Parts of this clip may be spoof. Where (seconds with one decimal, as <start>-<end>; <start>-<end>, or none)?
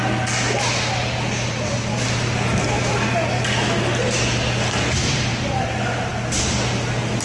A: none